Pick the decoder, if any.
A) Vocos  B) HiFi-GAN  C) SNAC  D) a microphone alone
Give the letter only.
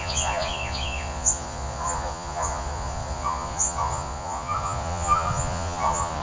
A